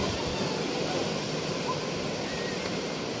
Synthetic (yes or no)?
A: no